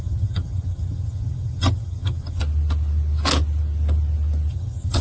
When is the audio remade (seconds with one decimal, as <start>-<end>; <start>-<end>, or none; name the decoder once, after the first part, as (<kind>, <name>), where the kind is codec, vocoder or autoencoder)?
0.0-2.4 (vocoder, HiFi-GAN); 4.5-5.0